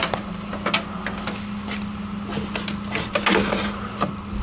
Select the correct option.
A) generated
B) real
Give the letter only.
B